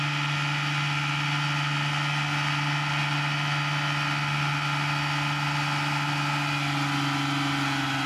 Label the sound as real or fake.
real